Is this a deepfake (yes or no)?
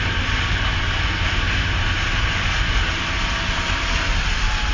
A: no